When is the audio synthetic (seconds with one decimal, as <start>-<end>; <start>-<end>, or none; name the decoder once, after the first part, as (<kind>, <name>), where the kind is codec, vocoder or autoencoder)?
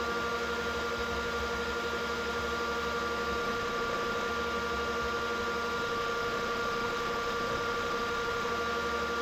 3.4-4.3 (autoencoder, DAC-VAE); 5.8-8.5